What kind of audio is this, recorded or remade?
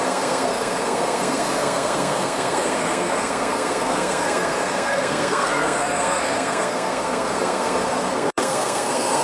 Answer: remade